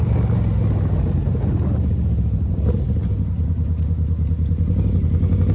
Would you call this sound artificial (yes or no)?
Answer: no